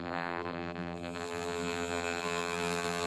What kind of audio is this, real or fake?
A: fake